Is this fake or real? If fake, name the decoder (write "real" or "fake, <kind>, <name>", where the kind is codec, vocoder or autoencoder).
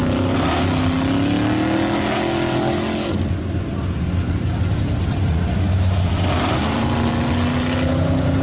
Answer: real